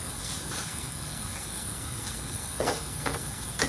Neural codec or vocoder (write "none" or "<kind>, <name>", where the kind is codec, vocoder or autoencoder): codec, SNAC